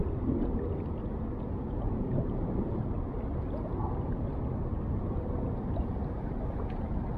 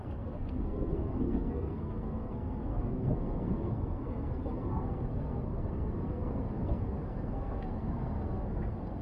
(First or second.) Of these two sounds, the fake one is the second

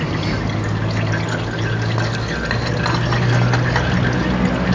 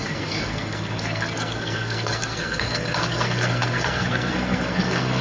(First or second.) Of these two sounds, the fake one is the second